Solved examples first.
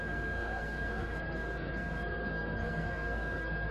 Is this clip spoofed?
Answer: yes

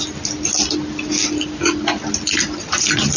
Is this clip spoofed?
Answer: no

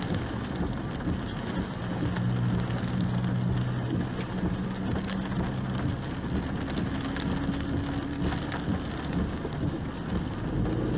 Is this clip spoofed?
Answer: no